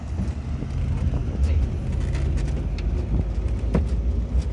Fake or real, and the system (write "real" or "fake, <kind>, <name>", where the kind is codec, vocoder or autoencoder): real